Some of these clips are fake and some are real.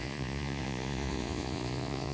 fake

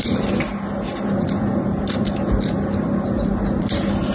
real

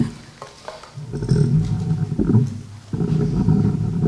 real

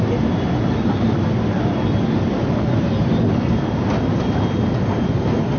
real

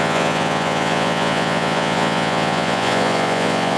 fake